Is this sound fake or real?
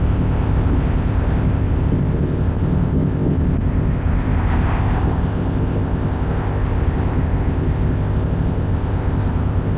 fake